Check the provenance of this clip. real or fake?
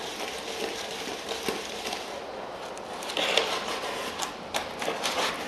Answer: real